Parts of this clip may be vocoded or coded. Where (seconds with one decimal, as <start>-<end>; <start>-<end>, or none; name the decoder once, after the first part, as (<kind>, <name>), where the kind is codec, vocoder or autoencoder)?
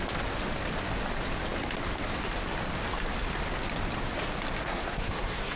4.7-5.6 (codec, SNAC)